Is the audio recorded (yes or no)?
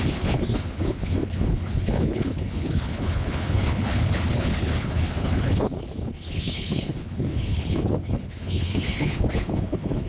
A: no